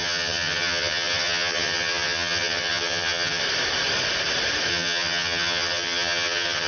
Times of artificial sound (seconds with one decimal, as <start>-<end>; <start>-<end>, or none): 0.0-3.4; 4.7-6.7